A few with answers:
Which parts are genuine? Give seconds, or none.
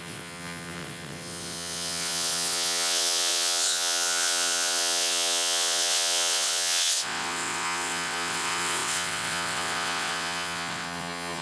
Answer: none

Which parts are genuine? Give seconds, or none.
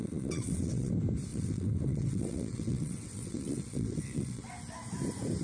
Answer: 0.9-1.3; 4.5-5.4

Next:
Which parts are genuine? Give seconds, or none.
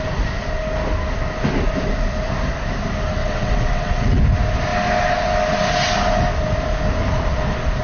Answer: 0.0-3.2; 4.2-7.8